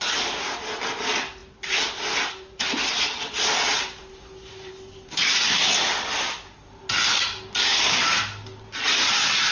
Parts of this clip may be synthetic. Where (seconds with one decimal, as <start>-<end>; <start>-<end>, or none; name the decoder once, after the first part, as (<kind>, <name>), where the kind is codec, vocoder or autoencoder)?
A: none